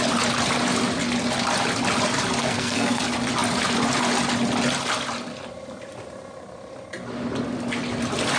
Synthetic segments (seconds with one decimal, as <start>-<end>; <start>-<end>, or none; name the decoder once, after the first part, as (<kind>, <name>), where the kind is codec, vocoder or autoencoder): 2.4-3.0 (codec, SNAC)